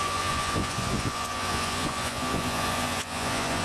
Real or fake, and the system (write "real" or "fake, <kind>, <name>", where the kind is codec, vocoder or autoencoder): fake, vocoder, Vocos